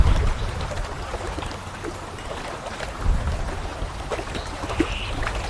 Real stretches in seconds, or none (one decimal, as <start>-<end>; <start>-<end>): 0.0-5.5